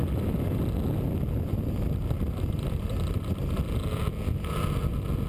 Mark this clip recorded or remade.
recorded